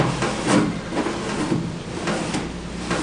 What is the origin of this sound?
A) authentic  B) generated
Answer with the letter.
A